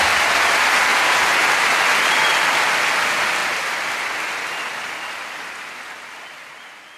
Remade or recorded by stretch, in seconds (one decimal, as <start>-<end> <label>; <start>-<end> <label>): 0.0-7.0 recorded